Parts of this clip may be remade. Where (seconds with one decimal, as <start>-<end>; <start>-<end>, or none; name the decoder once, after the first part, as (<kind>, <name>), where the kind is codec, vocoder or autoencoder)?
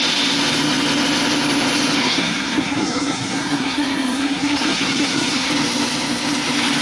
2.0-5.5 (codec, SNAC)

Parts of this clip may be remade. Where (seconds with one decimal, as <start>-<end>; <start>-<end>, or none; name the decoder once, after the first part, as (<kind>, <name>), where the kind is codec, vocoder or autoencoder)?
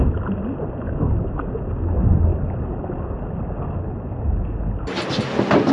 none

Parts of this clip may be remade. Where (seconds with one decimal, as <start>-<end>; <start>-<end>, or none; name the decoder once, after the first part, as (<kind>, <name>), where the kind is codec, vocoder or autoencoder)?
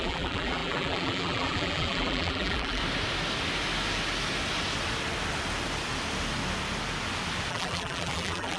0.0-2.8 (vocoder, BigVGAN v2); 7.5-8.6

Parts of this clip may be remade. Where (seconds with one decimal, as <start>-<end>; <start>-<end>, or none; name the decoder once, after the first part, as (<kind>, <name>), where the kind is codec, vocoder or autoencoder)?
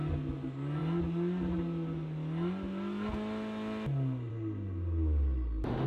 none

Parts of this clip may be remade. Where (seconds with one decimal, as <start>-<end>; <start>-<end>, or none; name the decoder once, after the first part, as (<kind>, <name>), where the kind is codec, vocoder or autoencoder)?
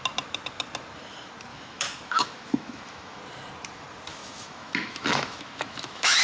1.5-3.2 (autoencoder, DAC-VAE); 4.1-6.2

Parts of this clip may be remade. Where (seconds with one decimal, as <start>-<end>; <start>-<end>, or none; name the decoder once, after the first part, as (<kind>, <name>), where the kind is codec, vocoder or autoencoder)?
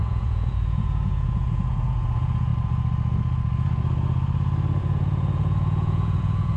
0.0-2.5 (vocoder, Vocos); 4.8-6.6